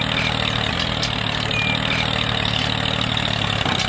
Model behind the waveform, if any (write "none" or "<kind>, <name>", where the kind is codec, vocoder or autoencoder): none